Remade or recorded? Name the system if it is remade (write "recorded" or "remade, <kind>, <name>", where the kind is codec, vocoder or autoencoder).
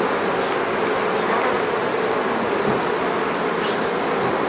recorded